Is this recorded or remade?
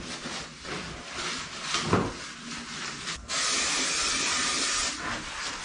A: recorded